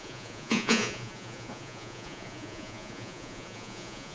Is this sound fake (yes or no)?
yes